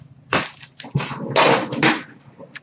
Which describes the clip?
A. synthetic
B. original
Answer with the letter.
B